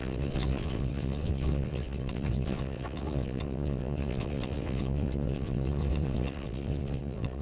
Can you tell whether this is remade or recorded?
remade